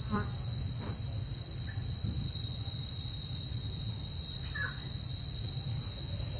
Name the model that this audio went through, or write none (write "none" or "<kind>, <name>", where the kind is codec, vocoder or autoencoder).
none